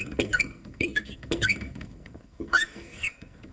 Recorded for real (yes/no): no